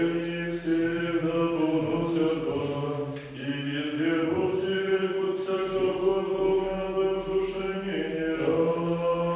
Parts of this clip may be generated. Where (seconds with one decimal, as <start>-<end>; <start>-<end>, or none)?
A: none